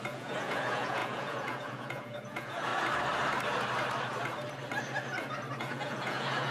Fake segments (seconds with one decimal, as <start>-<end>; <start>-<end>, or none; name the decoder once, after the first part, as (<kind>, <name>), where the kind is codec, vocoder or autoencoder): 0.0-2.7 (vocoder, Vocos); 5.6-6.5